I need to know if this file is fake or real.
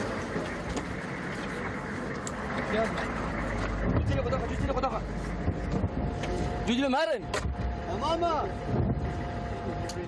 real